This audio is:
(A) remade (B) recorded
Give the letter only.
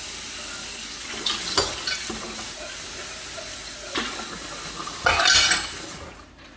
B